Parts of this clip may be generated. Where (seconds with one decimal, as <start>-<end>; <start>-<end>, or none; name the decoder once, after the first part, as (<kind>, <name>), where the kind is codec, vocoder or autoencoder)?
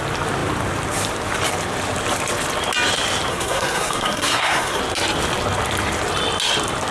3.3-4.8 (codec, SNAC)